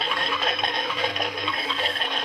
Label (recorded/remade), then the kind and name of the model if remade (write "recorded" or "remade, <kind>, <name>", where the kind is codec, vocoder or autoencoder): remade, codec, SNAC